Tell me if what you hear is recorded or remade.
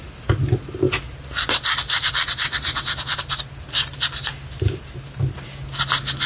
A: recorded